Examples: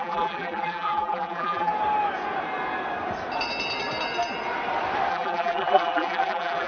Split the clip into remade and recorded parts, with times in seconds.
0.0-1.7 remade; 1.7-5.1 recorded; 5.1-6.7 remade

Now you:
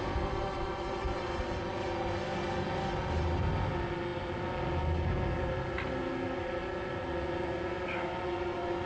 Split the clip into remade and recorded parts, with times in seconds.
0.0-8.9 recorded

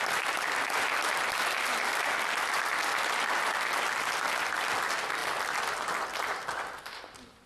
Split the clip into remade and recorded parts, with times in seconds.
0.0-7.5 recorded

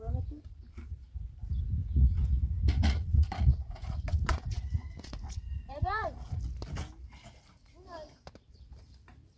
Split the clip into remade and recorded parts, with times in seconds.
0.0-1.8 recorded; 1.8-6.4 remade; 6.4-9.4 recorded

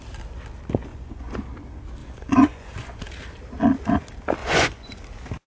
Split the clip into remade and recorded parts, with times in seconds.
0.0-0.9 recorded; 0.9-1.4 remade; 1.4-2.0 recorded; 2.0-3.0 remade; 3.0-4.4 recorded; 4.4-5.0 remade; 5.0-5.6 recorded

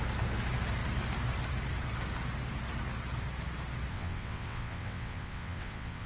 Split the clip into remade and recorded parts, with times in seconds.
0.0-3.9 recorded; 3.9-6.1 remade